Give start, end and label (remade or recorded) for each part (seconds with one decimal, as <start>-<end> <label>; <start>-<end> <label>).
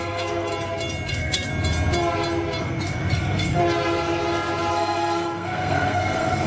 0.0-0.5 remade; 0.5-1.1 recorded; 1.1-1.5 remade; 1.5-2.6 recorded; 2.6-3.6 remade; 3.6-4.7 recorded; 4.7-6.5 remade